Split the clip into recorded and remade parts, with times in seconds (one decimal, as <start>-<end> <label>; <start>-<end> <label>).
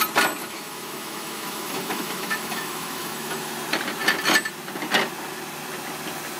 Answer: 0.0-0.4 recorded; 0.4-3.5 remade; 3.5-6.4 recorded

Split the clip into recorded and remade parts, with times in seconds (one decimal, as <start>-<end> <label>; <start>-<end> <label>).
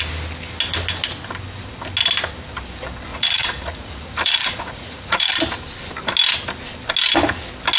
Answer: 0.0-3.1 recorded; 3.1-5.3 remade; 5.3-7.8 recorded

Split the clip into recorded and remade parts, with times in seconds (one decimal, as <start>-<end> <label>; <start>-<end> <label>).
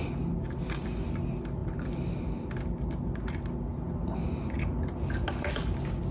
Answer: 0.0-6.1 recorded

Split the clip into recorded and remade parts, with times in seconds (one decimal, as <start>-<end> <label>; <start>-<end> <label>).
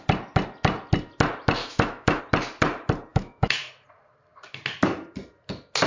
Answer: 0.0-1.6 recorded; 1.6-2.2 remade; 2.2-3.1 recorded; 3.1-3.7 remade; 3.7-5.9 recorded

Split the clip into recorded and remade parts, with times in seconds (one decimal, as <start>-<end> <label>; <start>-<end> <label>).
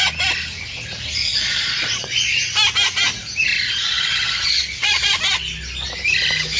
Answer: 0.0-1.2 recorded; 1.2-2.3 remade; 2.3-3.8 recorded; 3.8-5.2 remade; 5.2-6.6 recorded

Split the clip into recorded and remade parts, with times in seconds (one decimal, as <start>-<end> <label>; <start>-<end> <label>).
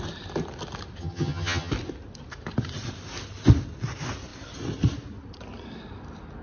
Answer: 0.0-1.0 recorded; 1.0-1.7 remade; 1.7-6.4 recorded